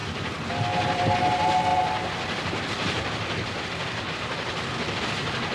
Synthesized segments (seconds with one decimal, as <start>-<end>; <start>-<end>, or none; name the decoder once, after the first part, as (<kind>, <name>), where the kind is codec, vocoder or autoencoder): 0.0-0.5 (vocoder, BigVGAN v2); 1.7-5.0